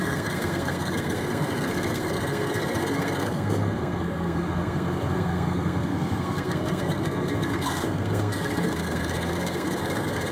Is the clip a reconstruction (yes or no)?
yes